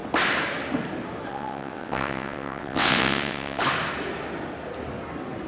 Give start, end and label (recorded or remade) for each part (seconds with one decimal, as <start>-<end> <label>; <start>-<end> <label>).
0.0-1.3 recorded; 1.3-3.6 remade; 3.6-5.5 recorded